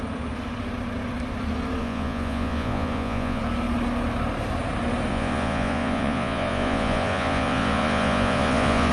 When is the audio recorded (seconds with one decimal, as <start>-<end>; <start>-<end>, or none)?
0.0-1.8; 3.4-5.1